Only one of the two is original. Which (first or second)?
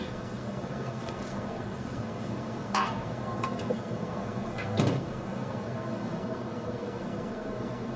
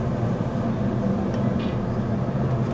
second